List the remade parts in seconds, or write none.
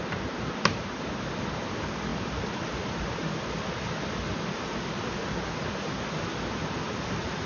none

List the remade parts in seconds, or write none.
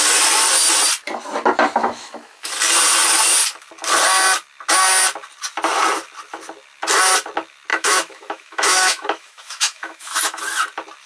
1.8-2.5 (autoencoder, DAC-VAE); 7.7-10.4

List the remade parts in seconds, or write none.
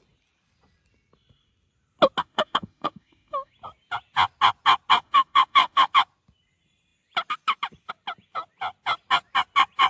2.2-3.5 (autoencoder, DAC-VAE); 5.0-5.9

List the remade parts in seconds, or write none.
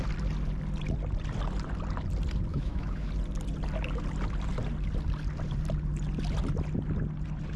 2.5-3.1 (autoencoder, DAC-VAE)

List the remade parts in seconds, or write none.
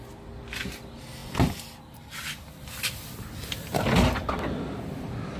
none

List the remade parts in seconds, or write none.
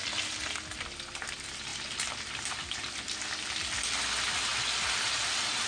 none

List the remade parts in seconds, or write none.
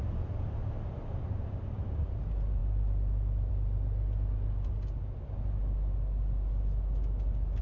none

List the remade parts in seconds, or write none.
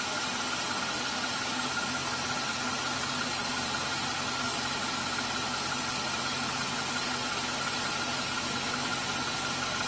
none